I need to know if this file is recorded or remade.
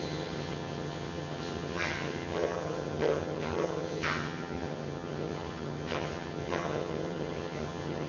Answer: remade